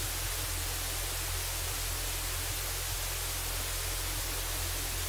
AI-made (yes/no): no